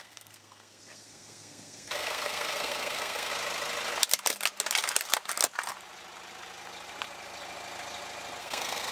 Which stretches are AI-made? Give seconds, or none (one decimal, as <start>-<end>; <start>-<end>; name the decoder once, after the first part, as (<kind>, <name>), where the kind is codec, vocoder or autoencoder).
0.0-3.3 (codec, SNAC); 8.4-8.9